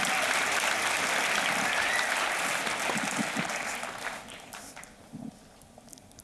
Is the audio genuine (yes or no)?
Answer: yes